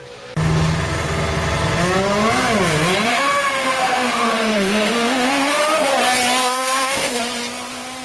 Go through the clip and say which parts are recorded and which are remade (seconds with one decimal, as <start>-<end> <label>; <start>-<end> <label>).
0.0-3.1 recorded; 3.1-5.9 remade; 5.9-6.4 recorded; 6.4-7.2 remade; 7.2-8.0 recorded